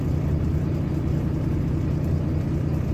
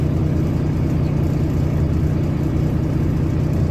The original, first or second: second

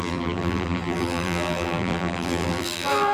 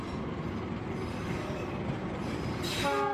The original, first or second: second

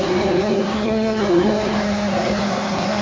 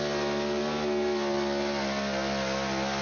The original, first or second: second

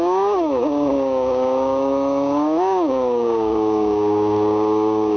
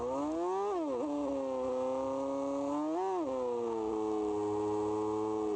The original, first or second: second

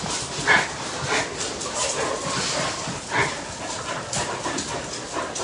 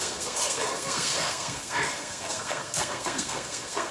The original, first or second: first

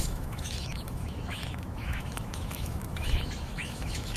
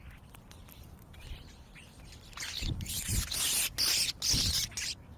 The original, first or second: second